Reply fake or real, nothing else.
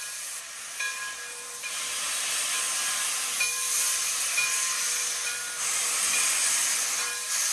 real